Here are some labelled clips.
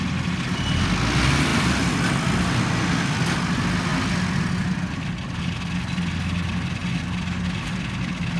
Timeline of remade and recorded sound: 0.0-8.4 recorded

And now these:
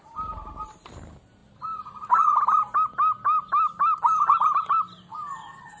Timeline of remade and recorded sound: 0.0-5.8 recorded

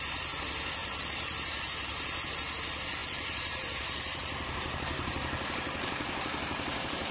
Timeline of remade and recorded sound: 0.0-0.8 recorded; 0.8-2.2 remade; 2.2-3.0 recorded; 3.0-7.1 remade